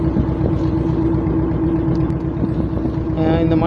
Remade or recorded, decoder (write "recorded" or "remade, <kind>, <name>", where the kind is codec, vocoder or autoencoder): recorded